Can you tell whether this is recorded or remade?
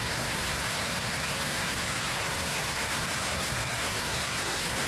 remade